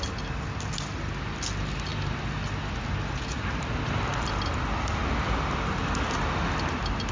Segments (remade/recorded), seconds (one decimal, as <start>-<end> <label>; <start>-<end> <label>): 0.0-5.0 recorded; 5.0-5.8 remade; 5.8-7.1 recorded